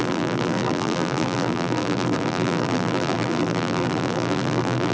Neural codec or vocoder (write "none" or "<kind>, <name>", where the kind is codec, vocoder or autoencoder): vocoder, BigVGAN v2